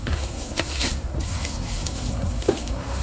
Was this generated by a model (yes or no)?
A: yes